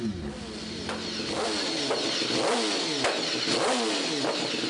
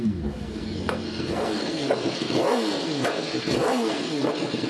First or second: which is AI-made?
second